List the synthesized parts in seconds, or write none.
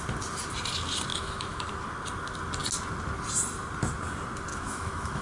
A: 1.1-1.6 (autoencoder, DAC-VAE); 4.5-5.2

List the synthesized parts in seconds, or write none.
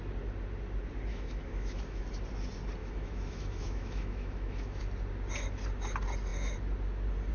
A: 1.1-2.0 (autoencoder, DAC-VAE); 2.8-4.8